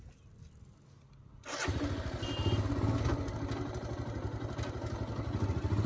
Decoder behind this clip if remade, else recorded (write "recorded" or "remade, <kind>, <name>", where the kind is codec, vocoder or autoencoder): recorded